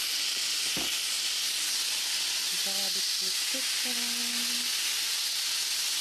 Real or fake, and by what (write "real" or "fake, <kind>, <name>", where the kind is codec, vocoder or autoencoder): real